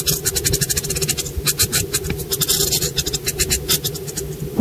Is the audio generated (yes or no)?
no